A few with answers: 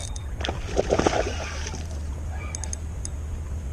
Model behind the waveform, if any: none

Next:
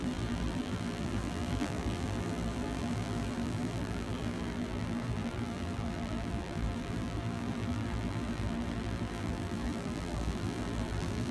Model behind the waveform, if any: vocoder, BigVGAN v2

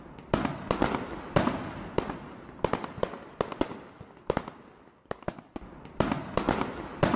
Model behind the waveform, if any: none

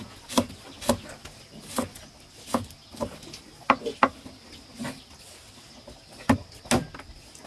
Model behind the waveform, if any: none